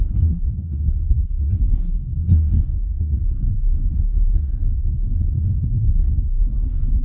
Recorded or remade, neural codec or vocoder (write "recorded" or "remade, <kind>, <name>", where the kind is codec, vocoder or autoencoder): remade, codec, SNAC